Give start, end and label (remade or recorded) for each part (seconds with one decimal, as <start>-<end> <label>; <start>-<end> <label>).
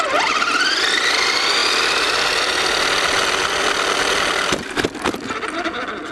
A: 0.0-6.1 recorded